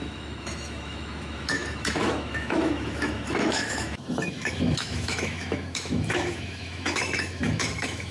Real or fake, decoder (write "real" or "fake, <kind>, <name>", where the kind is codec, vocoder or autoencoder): fake, autoencoder, DAC-VAE